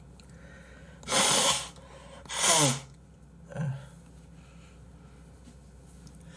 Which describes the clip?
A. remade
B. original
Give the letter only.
B